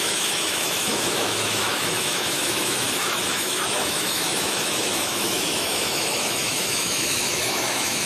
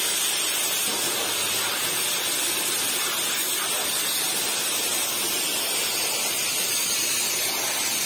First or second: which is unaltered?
second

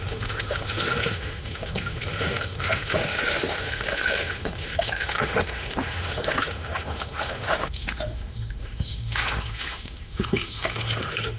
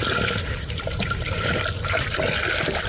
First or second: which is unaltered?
second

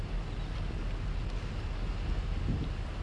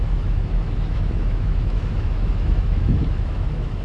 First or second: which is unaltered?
first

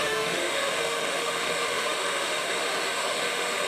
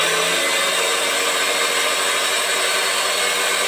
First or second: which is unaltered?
second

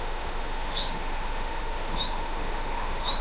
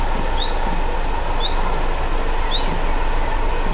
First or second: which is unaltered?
second